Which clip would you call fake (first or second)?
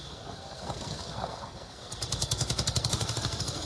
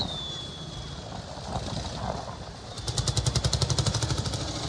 first